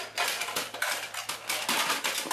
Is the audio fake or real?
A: real